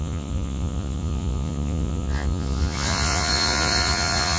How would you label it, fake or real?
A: fake